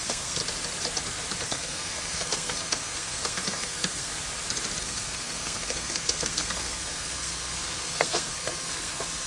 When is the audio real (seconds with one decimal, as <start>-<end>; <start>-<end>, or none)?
0.4-1.4; 4.1-4.8